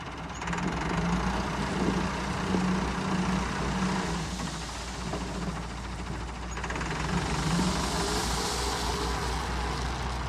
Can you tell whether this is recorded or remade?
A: recorded